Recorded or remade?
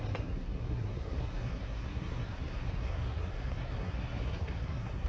remade